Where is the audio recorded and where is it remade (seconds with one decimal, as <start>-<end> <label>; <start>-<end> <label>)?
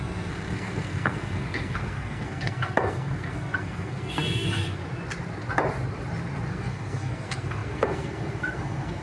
0.0-4.8 remade; 4.8-6.5 recorded; 6.5-9.0 remade